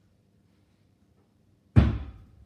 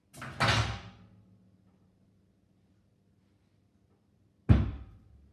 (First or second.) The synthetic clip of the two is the first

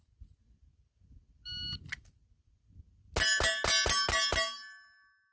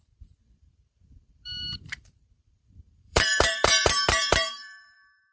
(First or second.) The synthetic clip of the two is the second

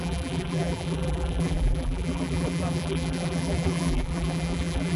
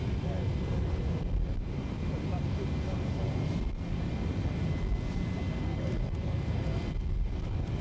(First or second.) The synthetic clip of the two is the first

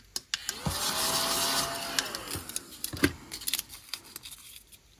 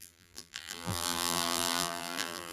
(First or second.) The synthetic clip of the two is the second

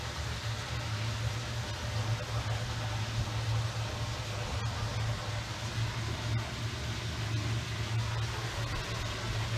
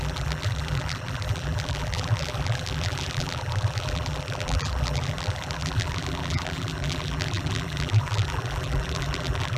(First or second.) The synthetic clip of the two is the second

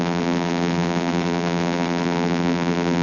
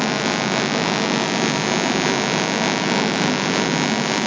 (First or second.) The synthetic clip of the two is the first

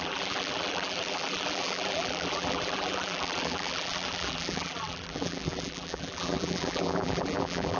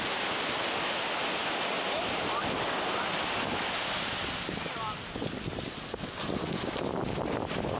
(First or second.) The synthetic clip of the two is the first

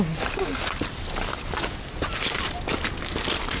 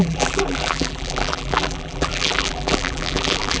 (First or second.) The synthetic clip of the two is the second